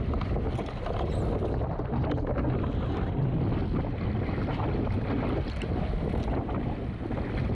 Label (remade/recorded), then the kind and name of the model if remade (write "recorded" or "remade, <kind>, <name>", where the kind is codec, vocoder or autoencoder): recorded